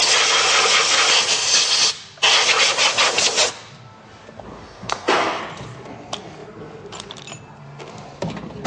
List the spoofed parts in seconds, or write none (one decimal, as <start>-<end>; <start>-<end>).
4.6-5.4